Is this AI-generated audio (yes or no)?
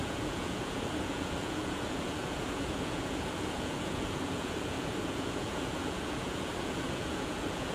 yes